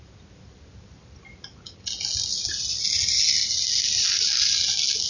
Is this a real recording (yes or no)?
yes